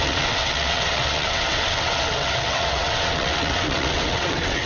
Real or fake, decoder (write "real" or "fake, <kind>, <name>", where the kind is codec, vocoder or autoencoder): fake, vocoder, WaveNeXt